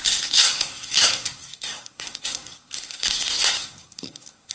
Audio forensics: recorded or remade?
remade